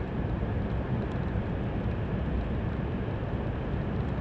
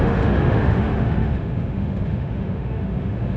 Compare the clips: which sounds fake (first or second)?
second